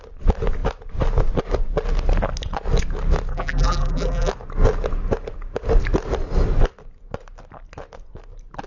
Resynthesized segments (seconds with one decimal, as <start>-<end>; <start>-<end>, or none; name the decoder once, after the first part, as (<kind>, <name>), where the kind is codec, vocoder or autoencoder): 3.3-4.3 (vocoder, BigVGAN v2)